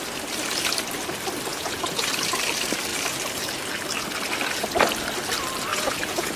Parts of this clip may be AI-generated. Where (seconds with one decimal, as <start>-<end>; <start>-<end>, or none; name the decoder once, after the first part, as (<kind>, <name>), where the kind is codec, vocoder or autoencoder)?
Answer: 1.5-2.1 (vocoder, Vocos); 5.7-6.4